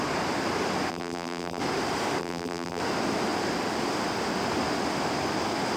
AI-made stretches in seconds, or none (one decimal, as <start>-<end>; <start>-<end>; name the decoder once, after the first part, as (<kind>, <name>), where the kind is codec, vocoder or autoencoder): 0.9-1.6 (vocoder, BigVGAN v2); 2.2-2.8